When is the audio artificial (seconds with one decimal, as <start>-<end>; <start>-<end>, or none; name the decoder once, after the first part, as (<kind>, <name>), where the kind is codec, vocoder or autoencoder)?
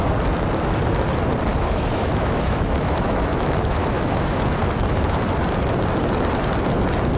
1.5-4.6 (autoencoder, DAC-VAE)